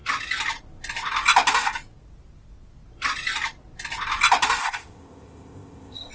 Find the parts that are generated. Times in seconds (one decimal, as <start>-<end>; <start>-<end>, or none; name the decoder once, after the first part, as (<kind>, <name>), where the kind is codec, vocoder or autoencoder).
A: 4.6-6.1 (codec, ZipCodec)

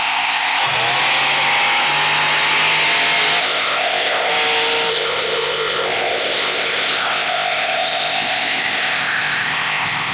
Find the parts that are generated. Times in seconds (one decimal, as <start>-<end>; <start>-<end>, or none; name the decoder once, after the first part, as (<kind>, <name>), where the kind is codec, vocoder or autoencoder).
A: 0.0-0.6 (codec, ZipCodec); 3.4-4.3; 4.9-10.1

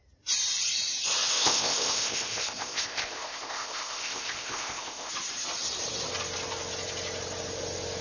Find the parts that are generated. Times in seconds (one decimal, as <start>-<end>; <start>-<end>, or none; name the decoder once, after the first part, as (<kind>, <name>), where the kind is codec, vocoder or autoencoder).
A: 1.3-5.1 (codec, ZipCodec)

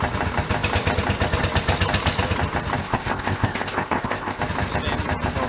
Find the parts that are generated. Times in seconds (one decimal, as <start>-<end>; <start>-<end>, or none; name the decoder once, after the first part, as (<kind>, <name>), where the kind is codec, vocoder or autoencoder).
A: 2.8-4.4 (codec, ZipCodec)